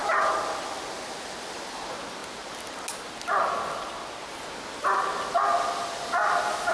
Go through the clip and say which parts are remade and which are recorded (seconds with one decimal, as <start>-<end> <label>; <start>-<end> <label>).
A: 0.0-6.7 recorded